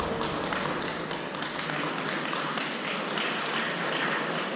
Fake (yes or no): no